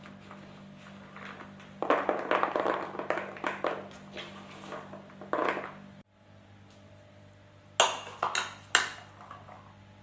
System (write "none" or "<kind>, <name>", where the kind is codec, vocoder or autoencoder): none